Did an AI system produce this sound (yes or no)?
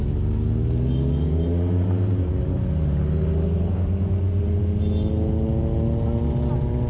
no